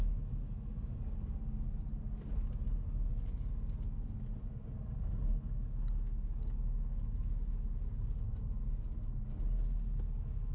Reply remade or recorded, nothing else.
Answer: recorded